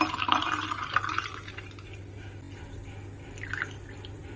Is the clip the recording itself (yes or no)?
yes